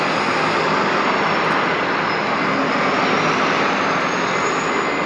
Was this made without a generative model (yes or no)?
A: yes